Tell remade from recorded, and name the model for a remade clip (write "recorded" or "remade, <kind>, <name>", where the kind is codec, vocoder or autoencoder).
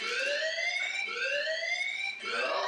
recorded